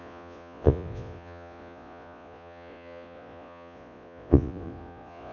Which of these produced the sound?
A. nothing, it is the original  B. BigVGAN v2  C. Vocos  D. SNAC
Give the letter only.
C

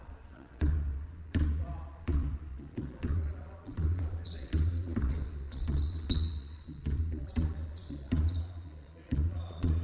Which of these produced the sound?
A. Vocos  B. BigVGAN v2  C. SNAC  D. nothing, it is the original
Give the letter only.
A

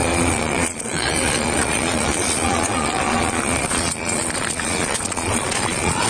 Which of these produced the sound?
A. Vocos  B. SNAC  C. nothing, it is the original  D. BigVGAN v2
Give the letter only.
A